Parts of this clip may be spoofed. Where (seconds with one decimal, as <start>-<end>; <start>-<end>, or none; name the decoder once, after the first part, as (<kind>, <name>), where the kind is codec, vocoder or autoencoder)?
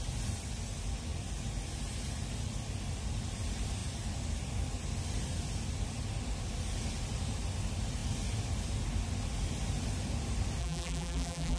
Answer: 10.6-11.6 (vocoder, BigVGAN v2)